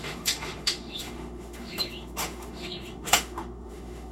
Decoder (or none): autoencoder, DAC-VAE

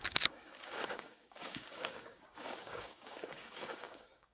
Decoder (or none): codec, DAC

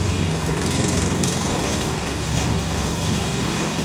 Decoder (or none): codec, DAC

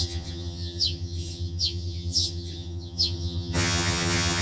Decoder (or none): vocoder, HiFi-GAN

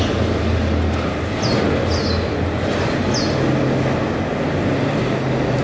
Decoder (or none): none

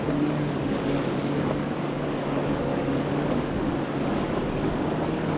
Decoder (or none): codec, DAC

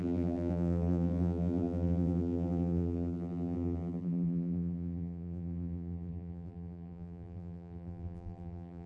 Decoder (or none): vocoder, BigVGAN v2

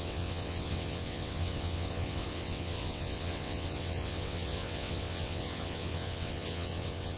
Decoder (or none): vocoder, WaveNeXt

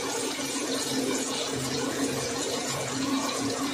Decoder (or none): vocoder, Vocos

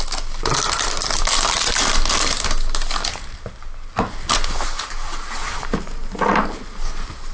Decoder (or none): none